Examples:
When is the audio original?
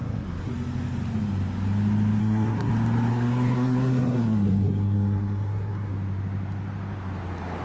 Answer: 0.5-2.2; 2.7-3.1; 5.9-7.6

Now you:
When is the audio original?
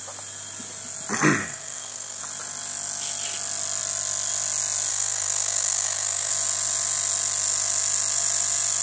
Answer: 0.0-1.4; 2.2-4.9; 6.3-8.8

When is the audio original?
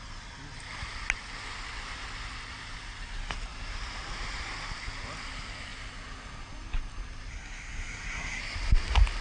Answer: 0.0-7.3; 8.4-9.2